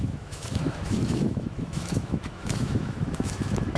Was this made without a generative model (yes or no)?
no